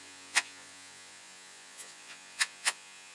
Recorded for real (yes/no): no